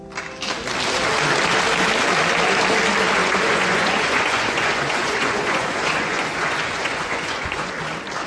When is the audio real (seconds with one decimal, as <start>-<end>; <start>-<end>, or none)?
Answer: 0.0-3.2; 7.7-8.3